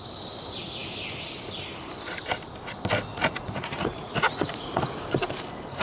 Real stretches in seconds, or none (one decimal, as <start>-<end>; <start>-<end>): 0.0-3.1; 4.8-5.8